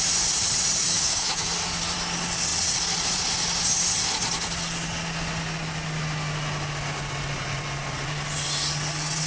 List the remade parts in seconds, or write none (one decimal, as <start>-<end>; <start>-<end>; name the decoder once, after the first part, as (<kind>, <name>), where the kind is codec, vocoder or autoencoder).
0.8-1.5 (autoencoder, DAC-VAE)